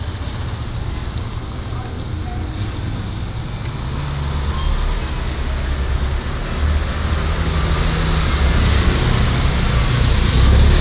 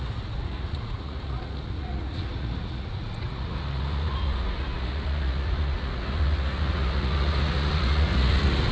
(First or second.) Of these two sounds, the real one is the first